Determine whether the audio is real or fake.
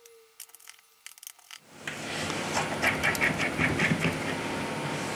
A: real